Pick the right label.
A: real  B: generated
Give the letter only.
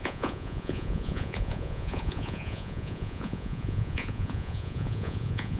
B